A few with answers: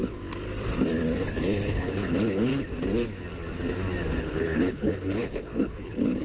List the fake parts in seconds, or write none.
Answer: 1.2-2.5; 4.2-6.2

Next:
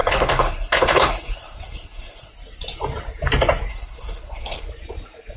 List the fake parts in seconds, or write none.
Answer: 0.0-2.3; 3.7-4.7

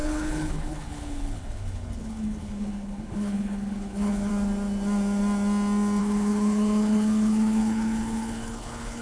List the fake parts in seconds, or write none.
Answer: 0.0-4.3; 6.0-9.0

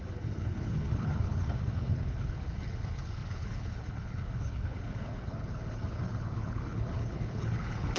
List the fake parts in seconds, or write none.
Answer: 0.0-8.0

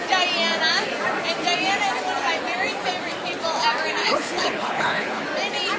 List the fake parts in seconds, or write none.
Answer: 4.0-5.2

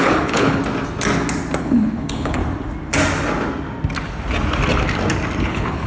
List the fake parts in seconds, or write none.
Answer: 0.0-0.6; 1.6-2.4; 5.4-5.9